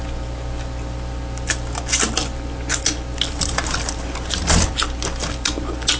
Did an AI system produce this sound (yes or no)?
no